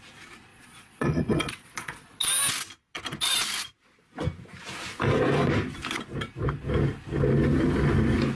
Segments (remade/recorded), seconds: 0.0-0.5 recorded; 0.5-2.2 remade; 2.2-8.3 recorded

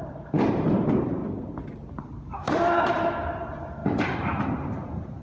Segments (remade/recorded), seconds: 0.0-1.2 remade; 1.2-2.0 recorded; 2.0-5.2 remade

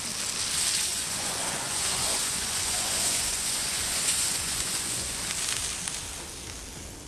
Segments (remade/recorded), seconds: 0.0-0.9 recorded; 0.9-5.2 remade; 5.2-7.1 recorded

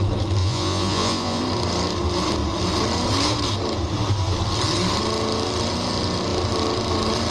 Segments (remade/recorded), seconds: 0.0-0.4 recorded; 0.4-1.4 remade; 1.4-7.3 recorded

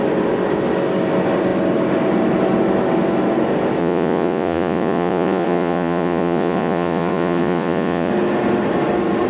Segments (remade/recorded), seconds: 0.0-3.8 recorded; 3.8-8.1 remade; 8.1-9.3 recorded

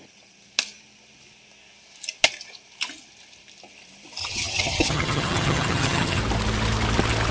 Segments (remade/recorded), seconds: 0.0-4.2 recorded; 4.2-6.2 remade; 6.2-7.3 recorded

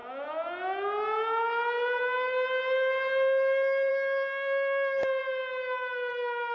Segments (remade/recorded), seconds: 0.0-6.5 recorded

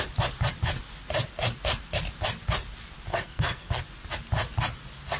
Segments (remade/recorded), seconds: 0.0-3.1 recorded; 3.1-3.8 remade; 3.8-5.2 recorded